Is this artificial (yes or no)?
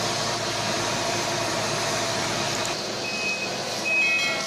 no